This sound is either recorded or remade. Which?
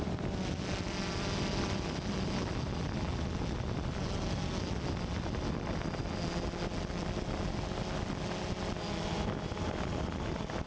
recorded